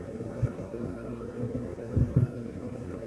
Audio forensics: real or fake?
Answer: fake